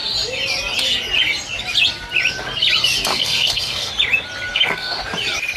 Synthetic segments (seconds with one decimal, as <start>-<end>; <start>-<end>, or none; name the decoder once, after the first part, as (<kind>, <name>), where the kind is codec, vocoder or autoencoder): 3.1-3.9 (codec, SNAC); 4.5-5.0